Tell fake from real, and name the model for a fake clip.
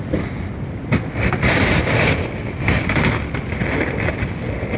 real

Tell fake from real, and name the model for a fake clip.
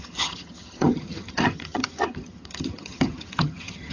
fake, vocoder, HiFi-GAN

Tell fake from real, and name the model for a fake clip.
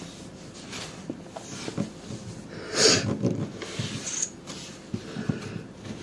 real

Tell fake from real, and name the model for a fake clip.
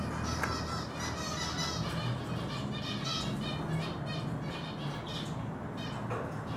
real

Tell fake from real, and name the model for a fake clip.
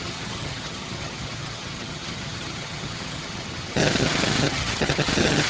fake, vocoder, HiFi-GAN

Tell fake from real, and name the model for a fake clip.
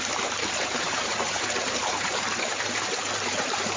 fake, vocoder, BigVGAN v2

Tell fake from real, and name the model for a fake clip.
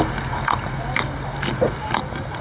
real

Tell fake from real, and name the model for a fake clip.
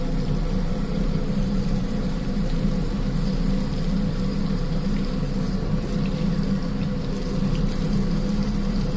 fake, vocoder, BigVGAN v2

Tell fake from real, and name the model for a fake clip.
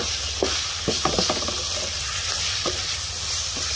real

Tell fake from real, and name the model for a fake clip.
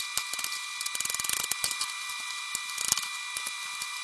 real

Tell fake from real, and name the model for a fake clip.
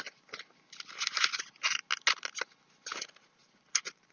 real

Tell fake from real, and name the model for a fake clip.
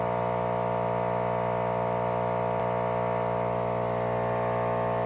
real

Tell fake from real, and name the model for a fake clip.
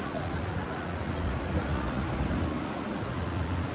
fake, vocoder, Vocos